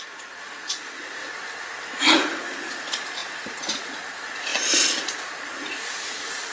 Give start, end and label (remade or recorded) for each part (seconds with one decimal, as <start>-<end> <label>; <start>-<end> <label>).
0.0-1.2 remade; 1.2-2.0 recorded; 2.0-4.5 remade; 4.5-5.4 recorded; 5.4-6.5 remade